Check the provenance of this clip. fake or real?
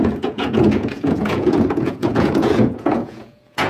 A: fake